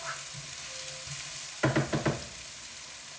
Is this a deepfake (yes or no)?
no